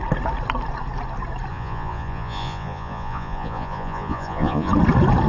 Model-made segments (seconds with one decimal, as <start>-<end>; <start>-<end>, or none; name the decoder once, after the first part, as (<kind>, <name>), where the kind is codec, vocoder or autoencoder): 1.5-4.7 (vocoder, Vocos)